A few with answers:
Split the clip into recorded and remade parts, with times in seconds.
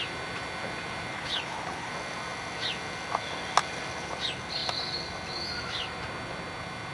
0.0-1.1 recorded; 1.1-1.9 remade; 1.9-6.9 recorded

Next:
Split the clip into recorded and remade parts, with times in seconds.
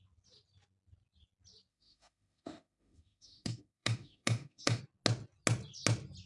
0.0-1.7 recorded; 1.7-4.8 remade; 4.8-6.3 recorded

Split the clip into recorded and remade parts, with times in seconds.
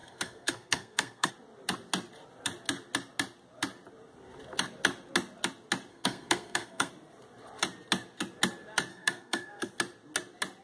0.0-1.3 remade; 1.3-5.9 recorded; 5.9-6.9 remade; 6.9-8.9 recorded; 8.9-9.7 remade; 9.7-10.6 recorded